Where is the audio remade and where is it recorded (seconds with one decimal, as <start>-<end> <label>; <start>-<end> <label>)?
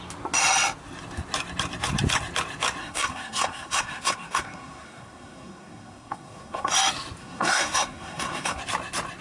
0.0-2.8 recorded; 2.8-6.7 remade; 6.7-7.2 recorded; 7.2-8.6 remade; 8.6-9.2 recorded